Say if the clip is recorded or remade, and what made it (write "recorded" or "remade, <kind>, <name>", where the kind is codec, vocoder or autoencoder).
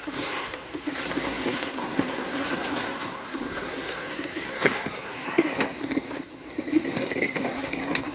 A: remade, codec, SNAC